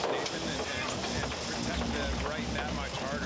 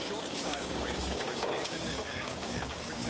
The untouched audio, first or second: first